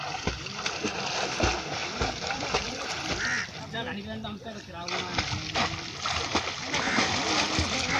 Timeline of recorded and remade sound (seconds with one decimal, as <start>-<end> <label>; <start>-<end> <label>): 0.0-1.8 recorded; 1.8-3.0 remade; 3.0-8.0 recorded